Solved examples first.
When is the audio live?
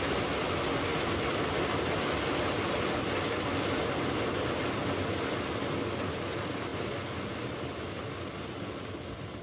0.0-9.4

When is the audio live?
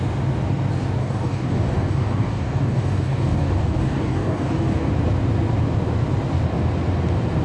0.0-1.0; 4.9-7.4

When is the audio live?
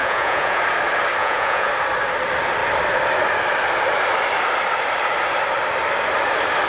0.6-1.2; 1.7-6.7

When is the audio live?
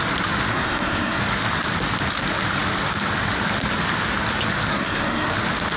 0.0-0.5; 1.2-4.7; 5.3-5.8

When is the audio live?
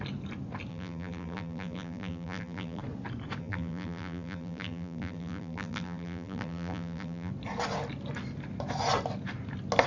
0.0-0.7; 2.8-3.4; 7.3-9.9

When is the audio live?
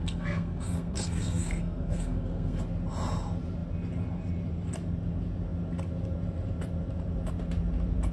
2.6-8.1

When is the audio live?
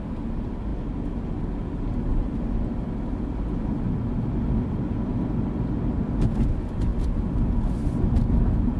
0.0-8.8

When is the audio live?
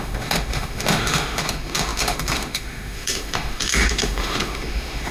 none